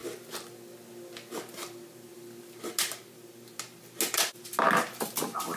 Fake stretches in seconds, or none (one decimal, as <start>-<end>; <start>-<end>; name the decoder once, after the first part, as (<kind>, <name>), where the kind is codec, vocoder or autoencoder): none